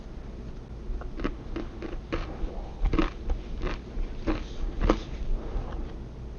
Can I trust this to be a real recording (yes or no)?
yes